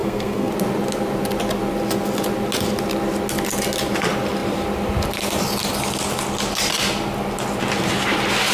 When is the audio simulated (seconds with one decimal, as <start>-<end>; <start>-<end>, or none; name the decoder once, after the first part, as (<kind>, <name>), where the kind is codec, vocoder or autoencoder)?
0.0-0.5 (codec, SNAC)